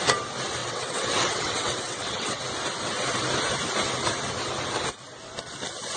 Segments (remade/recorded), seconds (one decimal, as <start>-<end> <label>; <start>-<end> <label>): 0.0-0.6 recorded; 0.6-2.4 remade; 2.4-6.0 recorded